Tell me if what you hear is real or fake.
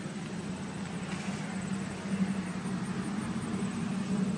real